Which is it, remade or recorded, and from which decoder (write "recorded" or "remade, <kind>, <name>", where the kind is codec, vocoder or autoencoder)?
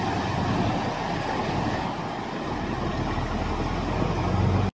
recorded